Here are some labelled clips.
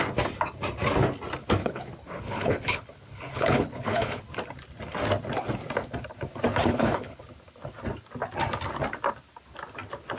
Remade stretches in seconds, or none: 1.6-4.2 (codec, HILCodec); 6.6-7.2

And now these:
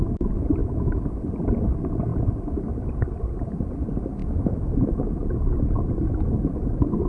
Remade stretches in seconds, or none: 0.6-1.2 (autoencoder, DAC-VAE); 4.2-5.0

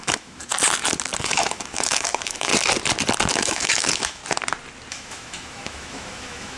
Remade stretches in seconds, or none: 0.0-0.5 (autoencoder, DAC-VAE); 1.2-2.5; 3.3-4.2; 4.9-6.6

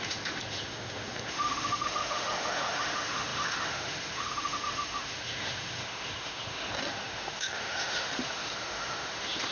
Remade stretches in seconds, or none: 0.0-9.5 (autoencoder, DAC-VAE)

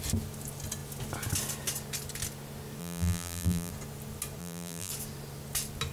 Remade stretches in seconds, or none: 2.8-3.7 (vocoder, BigVGAN v2); 4.4-4.9

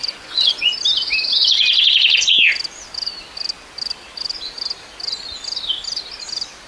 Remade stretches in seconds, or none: 0.0-0.7 (vocoder, Vocos)

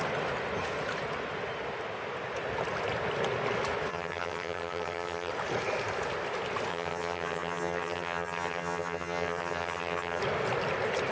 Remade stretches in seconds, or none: 3.9-5.3 (vocoder, HiFi-GAN); 6.7-10.2